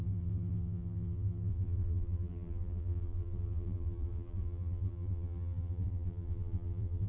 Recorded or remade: remade